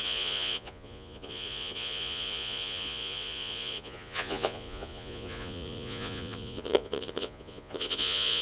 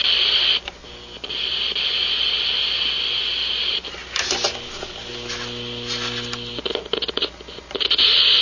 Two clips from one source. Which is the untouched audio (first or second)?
second